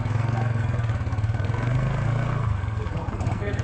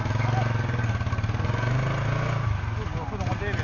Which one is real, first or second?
second